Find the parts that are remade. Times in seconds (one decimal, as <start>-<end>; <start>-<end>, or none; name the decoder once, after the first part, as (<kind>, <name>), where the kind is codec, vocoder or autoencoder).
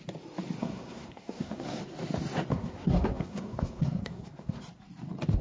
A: 0.6-1.8 (codec, SNAC); 2.5-4.6